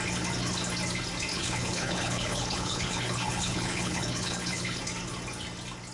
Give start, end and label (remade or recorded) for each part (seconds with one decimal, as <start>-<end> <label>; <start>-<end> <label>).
0.0-1.3 recorded; 1.3-4.8 remade; 4.8-5.9 recorded